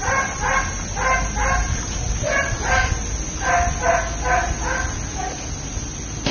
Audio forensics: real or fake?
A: real